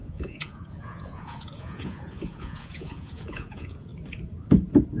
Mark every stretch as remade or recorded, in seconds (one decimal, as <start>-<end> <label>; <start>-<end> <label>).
0.0-3.9 remade; 3.9-5.0 recorded